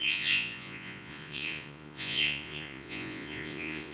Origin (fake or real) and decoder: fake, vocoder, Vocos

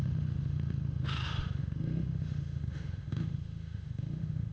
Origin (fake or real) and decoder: fake, autoencoder, DAC-VAE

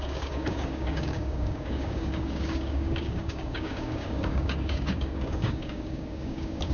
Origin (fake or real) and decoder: fake, codec, DAC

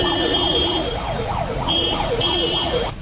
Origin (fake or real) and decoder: fake, vocoder, Vocos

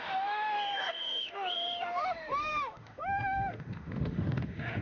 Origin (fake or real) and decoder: fake, autoencoder, DAC-VAE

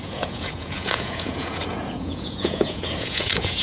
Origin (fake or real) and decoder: fake, vocoder, Vocos